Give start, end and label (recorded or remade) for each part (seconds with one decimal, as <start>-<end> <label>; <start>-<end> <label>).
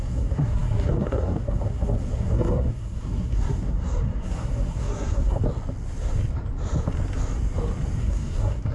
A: 0.0-5.4 remade; 5.4-8.0 recorded; 8.0-8.7 remade